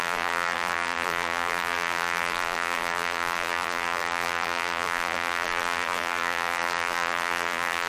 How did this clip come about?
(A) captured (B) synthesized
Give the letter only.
B